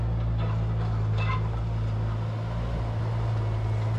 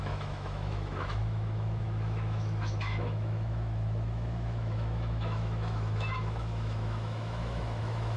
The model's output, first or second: second